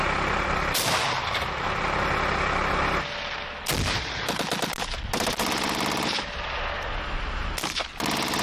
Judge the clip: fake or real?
real